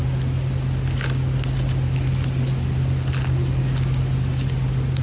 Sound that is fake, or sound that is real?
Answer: real